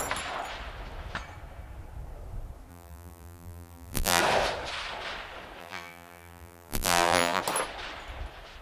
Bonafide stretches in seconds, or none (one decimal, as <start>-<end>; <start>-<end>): 0.0-2.7; 4.2-5.6; 7.4-8.6